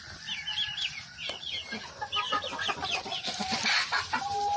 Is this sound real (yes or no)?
yes